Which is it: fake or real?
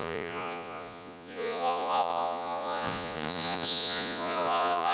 fake